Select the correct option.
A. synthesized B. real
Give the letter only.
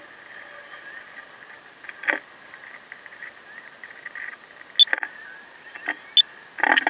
B